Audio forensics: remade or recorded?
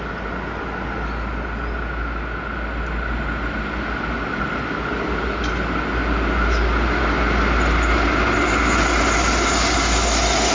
recorded